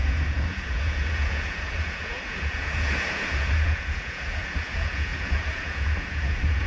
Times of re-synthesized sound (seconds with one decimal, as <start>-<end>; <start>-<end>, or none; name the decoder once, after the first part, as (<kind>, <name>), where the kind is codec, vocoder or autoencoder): 0.0-6.7 (vocoder, Vocos)